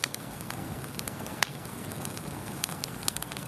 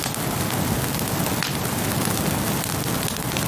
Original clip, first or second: second